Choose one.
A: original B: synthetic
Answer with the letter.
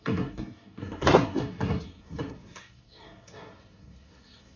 B